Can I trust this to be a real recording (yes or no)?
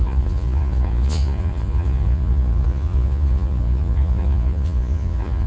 no